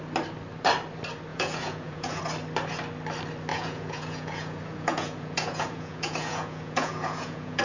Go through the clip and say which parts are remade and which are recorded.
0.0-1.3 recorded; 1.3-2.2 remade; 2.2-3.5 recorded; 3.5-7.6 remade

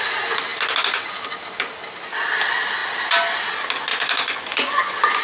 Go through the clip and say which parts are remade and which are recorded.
0.0-3.9 recorded; 3.9-5.2 remade